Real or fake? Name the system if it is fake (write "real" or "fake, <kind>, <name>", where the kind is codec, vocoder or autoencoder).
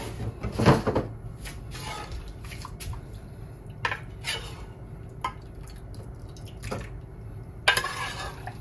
real